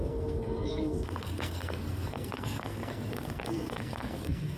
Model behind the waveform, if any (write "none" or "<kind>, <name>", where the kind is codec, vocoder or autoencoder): codec, SNAC